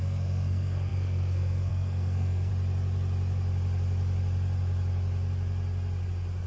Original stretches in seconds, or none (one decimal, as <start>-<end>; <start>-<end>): 2.5-6.5